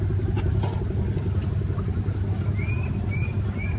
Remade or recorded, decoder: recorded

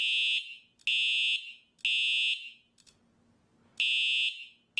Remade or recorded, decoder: recorded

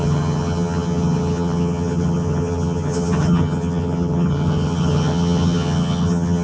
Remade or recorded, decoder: remade, vocoder, HiFi-GAN